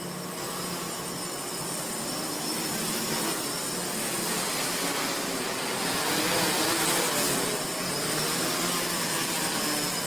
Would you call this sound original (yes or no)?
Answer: yes